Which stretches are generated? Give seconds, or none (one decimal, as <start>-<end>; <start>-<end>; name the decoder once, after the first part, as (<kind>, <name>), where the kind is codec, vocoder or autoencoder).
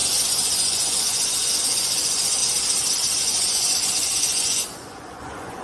0.0-2.4 (vocoder, Vocos); 3.2-5.6